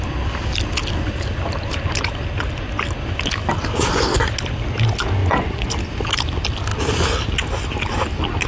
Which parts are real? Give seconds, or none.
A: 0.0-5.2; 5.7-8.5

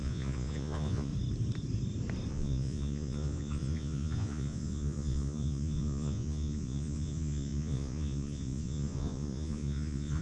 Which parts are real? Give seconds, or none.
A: 1.1-2.3

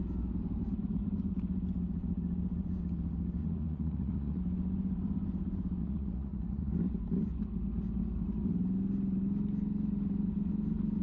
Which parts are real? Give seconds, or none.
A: 0.0-3.4; 4.4-5.8; 6.7-11.0

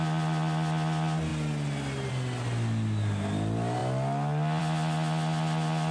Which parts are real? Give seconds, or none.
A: 0.0-5.9

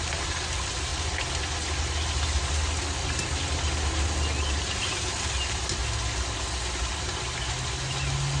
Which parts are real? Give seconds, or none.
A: 0.0-8.4